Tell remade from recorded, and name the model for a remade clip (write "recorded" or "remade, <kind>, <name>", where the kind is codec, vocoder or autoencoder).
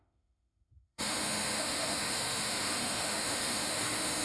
remade, autoencoder, DAC-VAE